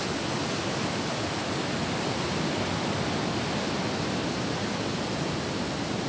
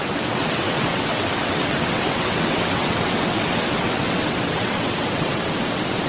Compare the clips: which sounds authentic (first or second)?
first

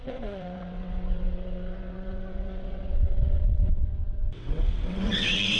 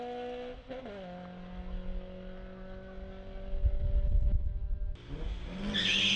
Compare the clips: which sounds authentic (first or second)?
second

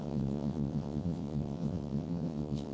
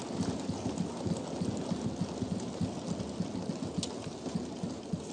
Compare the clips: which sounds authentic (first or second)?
second